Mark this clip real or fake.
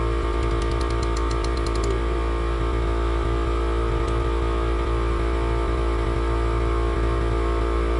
real